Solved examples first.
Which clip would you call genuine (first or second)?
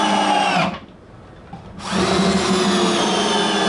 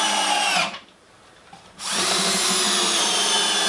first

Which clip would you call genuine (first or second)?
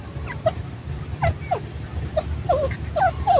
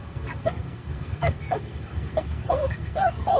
first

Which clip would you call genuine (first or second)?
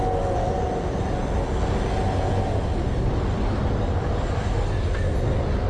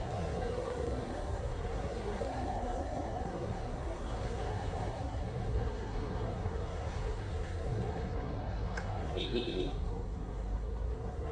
first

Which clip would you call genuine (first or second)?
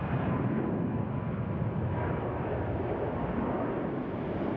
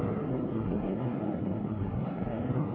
first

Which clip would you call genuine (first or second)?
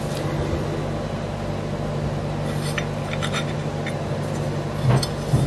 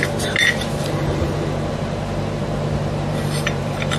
first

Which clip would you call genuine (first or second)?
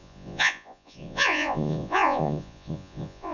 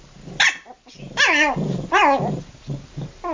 second